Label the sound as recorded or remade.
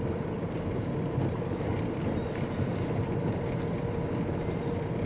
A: remade